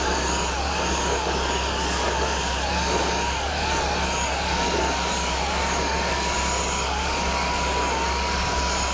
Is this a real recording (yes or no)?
no